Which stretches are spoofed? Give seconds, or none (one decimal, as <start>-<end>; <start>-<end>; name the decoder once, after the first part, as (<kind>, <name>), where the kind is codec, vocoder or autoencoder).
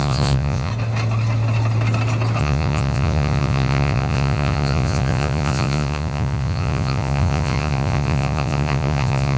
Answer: 0.0-0.7 (vocoder, Vocos); 2.4-9.4